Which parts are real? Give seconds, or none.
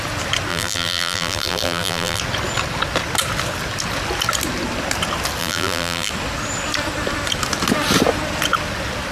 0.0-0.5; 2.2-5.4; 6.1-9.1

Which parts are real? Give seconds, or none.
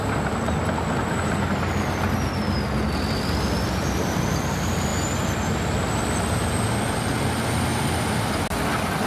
0.0-9.1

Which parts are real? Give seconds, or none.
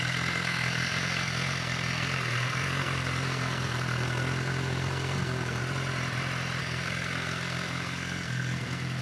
5.6-6.6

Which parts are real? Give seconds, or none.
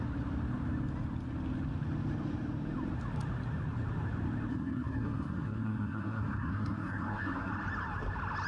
0.0-4.5; 7.5-8.5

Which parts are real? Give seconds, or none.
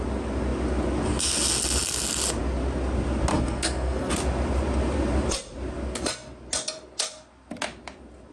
0.0-3.3; 4.1-8.3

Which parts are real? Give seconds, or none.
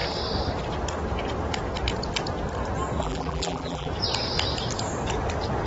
0.0-3.0; 3.9-5.7